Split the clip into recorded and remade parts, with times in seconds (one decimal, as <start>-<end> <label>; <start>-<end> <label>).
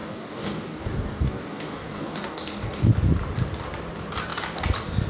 0.0-2.9 remade; 2.9-5.1 recorded